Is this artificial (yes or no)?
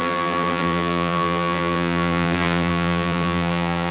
yes